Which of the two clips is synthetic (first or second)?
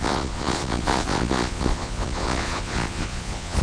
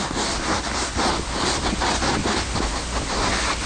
first